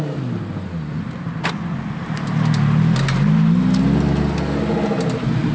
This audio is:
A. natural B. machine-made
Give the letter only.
A